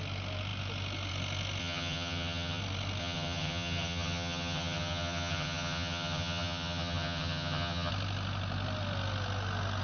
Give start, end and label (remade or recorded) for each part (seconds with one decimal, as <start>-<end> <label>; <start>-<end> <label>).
0.0-1.6 recorded; 1.6-2.6 remade; 2.6-3.0 recorded; 3.0-7.9 remade; 7.9-9.8 recorded